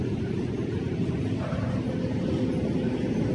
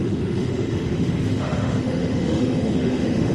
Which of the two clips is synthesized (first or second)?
second